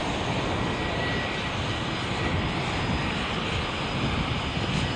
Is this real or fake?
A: real